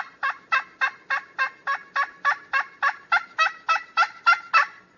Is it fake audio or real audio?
real